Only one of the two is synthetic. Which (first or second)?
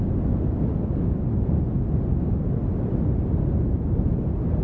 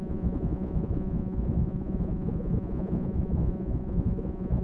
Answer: second